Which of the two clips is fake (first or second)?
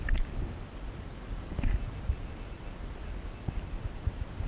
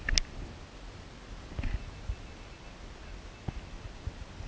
first